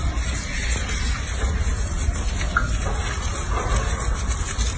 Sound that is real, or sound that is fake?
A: real